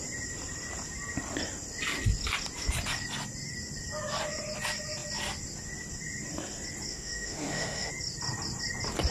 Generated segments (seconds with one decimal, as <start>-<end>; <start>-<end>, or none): 6.9-7.9